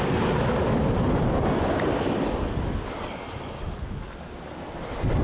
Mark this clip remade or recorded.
recorded